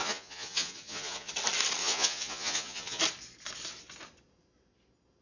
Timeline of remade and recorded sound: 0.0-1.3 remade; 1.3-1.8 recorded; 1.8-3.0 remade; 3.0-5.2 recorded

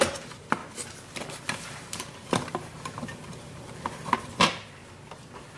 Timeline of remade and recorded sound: 0.0-0.6 remade; 0.6-1.2 recorded; 1.2-4.8 remade; 4.8-5.6 recorded

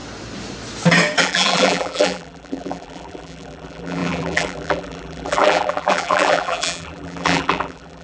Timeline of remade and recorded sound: 0.0-1.2 recorded; 1.2-8.0 remade

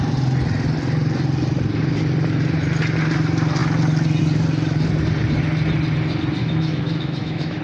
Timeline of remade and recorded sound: 0.0-6.4 recorded; 6.4-7.6 remade

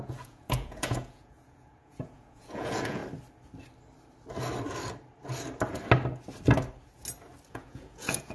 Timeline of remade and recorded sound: 0.0-3.0 remade; 3.0-7.5 recorded; 7.5-8.3 remade